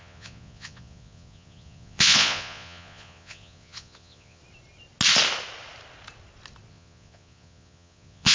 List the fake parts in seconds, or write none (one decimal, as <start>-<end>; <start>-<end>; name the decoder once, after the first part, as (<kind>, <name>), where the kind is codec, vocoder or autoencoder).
0.0-4.4 (vocoder, Vocos); 6.7-8.3